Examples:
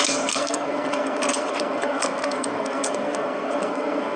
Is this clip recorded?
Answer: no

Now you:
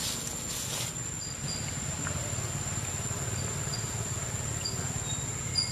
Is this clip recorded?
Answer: yes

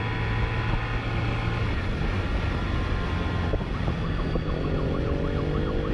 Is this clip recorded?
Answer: yes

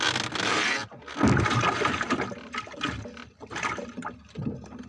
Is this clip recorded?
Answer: yes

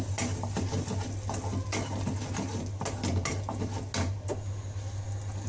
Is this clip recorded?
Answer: yes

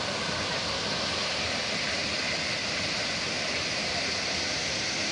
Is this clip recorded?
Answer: yes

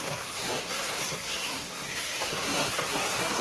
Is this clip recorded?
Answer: no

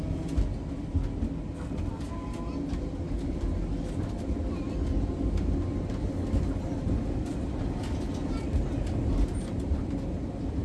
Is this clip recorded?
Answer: yes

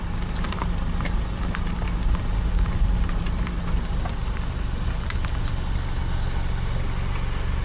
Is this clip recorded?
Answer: yes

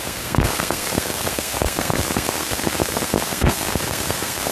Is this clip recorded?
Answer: no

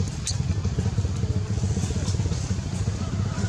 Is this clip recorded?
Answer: yes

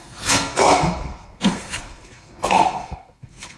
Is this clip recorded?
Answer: no